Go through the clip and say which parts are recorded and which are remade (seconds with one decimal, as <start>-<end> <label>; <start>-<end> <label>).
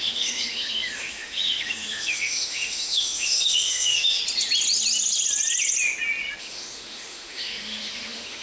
0.0-4.2 remade; 4.2-6.4 recorded; 6.4-8.4 remade